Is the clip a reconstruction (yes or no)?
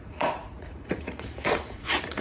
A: yes